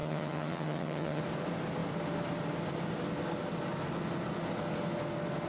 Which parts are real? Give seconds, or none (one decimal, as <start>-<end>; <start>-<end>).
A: 1.2-5.5